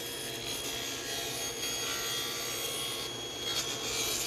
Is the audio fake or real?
real